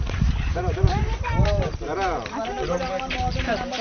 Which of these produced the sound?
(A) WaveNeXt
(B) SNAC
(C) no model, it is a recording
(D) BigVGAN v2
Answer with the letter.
D